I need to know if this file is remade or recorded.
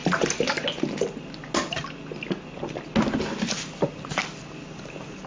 recorded